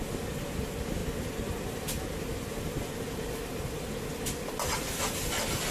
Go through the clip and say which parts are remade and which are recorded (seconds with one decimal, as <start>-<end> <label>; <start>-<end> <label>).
0.0-5.7 recorded